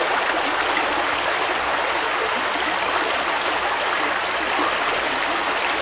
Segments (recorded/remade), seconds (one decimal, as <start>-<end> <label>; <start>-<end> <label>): 0.0-5.8 recorded